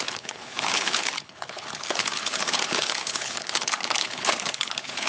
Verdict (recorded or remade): remade